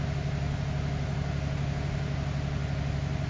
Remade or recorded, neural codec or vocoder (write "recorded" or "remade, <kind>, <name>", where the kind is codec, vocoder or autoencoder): recorded